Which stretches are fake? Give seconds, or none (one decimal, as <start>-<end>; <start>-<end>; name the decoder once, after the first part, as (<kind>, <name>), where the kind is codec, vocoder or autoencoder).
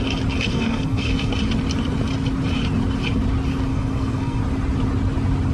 0.5-1.3 (codec, SNAC); 3.7-4.4